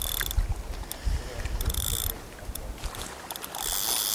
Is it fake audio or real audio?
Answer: real